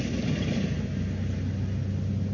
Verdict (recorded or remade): recorded